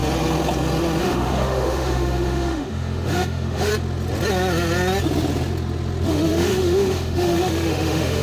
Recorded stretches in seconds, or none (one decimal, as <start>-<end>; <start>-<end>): 0.0-1.0; 3.7-6.1